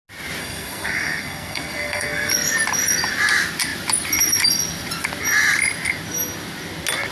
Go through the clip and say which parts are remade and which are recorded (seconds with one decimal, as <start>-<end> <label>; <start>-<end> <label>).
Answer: 0.0-0.4 recorded; 0.4-2.3 remade; 2.3-7.1 recorded

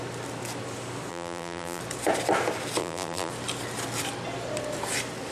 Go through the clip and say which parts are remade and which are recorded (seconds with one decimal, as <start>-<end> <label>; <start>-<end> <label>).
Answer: 0.0-1.1 recorded; 1.1-1.8 remade; 1.8-2.8 recorded; 2.8-3.3 remade; 3.3-5.3 recorded

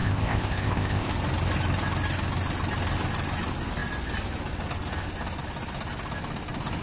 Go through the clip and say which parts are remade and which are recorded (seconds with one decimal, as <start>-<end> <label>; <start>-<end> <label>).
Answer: 0.0-1.1 remade; 1.1-6.8 recorded

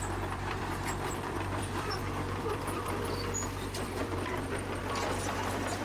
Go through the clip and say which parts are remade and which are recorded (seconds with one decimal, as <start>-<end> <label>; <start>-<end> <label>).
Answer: 0.0-5.8 remade

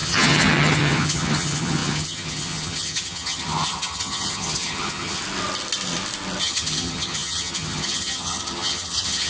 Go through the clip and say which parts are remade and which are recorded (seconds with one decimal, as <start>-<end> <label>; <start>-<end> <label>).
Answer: 0.0-5.2 remade; 5.2-6.4 recorded; 6.4-9.3 remade

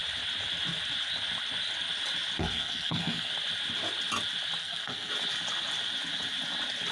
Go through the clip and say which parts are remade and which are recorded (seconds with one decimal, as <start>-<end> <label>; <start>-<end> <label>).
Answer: 0.0-2.4 recorded; 2.4-3.3 remade; 3.3-4.6 recorded; 4.6-5.1 remade; 5.1-6.9 recorded

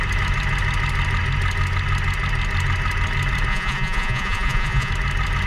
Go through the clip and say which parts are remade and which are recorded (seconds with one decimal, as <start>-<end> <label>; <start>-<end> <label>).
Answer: 0.0-3.5 recorded; 3.5-4.9 remade; 4.9-5.5 recorded